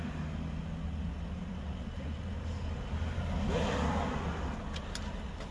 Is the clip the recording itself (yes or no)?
yes